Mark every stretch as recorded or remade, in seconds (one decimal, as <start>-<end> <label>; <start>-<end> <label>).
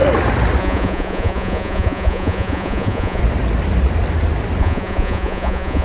0.0-0.6 recorded; 0.6-3.2 remade; 3.2-4.6 recorded; 4.6-5.8 remade